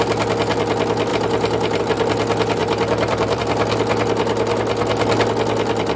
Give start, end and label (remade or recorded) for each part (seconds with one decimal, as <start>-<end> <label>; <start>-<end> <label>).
0.0-1.1 recorded; 1.1-1.8 remade; 1.8-2.6 recorded; 2.6-3.4 remade; 3.4-6.0 recorded